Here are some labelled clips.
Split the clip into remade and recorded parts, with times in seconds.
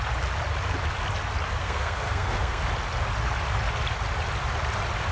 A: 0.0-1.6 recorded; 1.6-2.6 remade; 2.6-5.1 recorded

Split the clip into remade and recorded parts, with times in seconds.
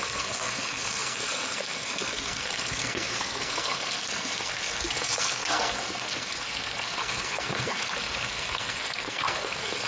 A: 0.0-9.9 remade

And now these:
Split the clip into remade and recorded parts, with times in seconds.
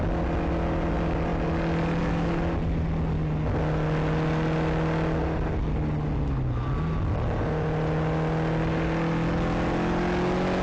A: 0.0-10.6 recorded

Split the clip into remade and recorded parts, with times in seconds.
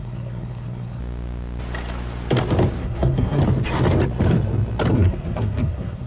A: 0.0-1.0 remade; 1.0-2.8 recorded; 2.8-3.4 remade; 3.4-4.9 recorded; 4.9-6.1 remade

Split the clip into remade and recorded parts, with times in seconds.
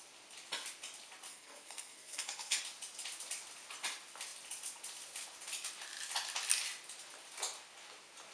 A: 0.0-1.3 recorded; 1.3-2.6 remade; 2.6-8.3 recorded